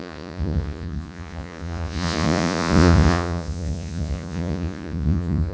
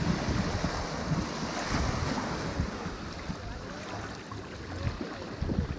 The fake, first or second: first